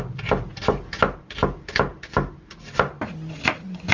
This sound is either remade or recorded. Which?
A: recorded